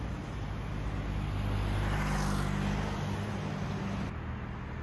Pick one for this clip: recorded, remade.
recorded